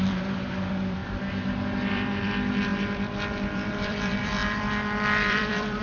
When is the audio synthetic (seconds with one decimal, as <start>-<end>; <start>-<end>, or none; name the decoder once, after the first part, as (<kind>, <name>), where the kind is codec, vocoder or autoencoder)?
0.0-1.0 (vocoder, BigVGAN v2); 1.9-5.8